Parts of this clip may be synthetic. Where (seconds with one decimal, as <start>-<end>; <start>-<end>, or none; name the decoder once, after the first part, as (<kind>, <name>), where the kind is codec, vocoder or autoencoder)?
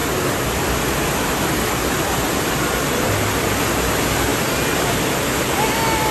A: none